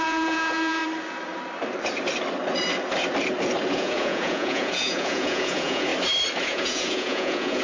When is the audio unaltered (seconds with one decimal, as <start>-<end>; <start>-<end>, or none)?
0.8-3.7; 5.9-6.4